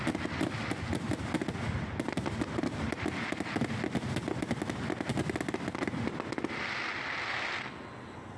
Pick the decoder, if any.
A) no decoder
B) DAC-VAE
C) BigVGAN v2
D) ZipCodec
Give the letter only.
A